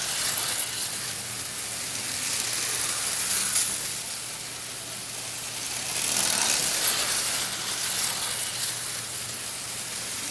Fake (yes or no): no